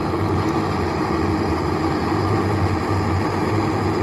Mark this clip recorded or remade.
recorded